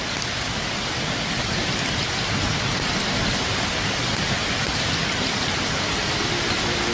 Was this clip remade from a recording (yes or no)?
no